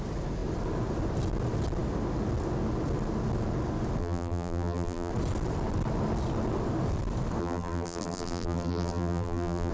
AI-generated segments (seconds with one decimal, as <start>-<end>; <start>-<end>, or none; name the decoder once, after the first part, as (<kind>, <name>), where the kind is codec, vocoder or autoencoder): 4.0-5.1 (vocoder, BigVGAN v2); 7.4-9.7